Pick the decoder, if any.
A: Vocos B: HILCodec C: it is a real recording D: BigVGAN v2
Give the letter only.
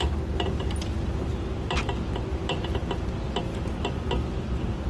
C